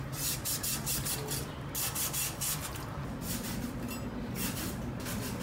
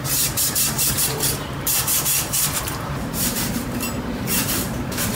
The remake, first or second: second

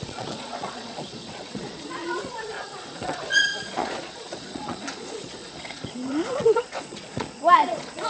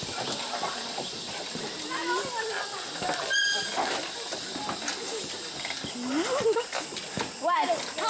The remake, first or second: first